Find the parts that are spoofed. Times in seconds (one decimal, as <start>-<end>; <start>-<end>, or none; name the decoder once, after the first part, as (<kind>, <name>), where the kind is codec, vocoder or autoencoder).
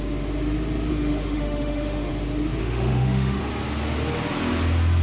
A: 0.9-2.1 (autoencoder, DAC-VAE); 2.6-3.4